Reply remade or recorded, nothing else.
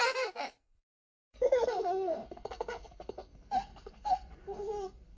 remade